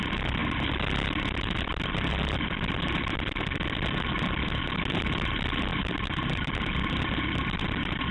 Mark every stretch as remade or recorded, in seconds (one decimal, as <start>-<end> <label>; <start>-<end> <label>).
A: 0.0-5.7 recorded; 5.7-6.5 remade; 6.5-8.1 recorded